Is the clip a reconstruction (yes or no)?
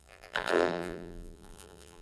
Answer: yes